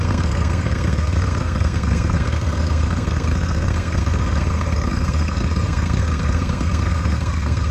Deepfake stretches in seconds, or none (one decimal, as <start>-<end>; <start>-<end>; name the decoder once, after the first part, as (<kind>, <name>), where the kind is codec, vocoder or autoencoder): 0.0-7.7 (codec, SNAC)